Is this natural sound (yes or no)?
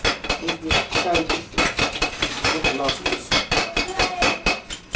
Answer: yes